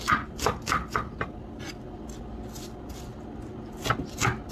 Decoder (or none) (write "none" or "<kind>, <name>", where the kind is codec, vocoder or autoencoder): none